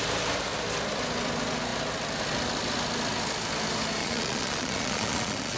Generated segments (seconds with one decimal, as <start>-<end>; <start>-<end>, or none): 4.0-5.6